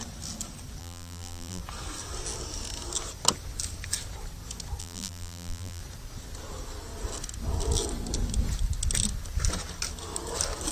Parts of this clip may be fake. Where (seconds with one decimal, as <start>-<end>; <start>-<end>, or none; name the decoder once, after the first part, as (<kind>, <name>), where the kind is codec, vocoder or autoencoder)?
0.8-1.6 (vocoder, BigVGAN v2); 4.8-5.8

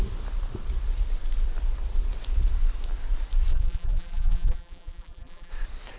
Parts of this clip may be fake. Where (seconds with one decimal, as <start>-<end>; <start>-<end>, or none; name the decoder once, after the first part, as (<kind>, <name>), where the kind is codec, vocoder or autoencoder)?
3.5-5.5 (vocoder, BigVGAN v2)

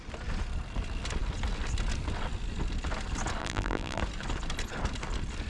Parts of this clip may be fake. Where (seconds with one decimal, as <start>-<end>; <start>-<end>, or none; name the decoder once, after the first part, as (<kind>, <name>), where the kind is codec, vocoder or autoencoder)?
3.4-4.0 (vocoder, BigVGAN v2)